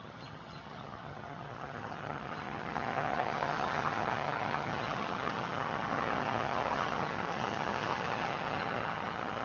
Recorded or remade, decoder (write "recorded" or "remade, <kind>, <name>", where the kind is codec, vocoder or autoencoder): remade, vocoder, HiFi-GAN